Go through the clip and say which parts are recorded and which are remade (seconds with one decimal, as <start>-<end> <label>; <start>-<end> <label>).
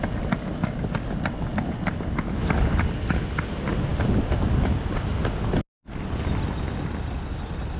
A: 0.0-7.8 recorded